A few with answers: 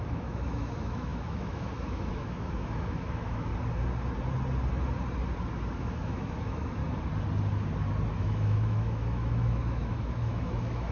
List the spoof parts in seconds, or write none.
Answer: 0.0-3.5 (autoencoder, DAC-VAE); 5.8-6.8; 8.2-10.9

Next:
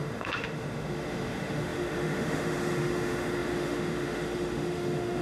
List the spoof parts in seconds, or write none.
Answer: 0.0-5.2 (autoencoder, DAC-VAE)

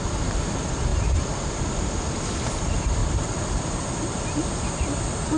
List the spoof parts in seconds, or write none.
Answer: none